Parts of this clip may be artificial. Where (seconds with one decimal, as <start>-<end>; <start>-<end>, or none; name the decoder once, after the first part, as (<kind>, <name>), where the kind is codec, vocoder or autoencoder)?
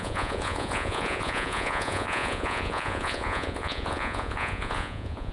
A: 0.0-5.3 (vocoder, Vocos)